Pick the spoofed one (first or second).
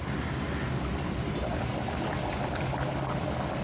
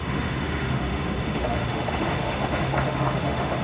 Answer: second